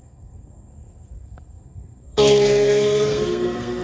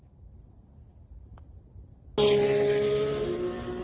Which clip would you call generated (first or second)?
first